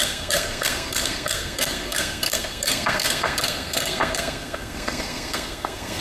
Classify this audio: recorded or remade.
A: remade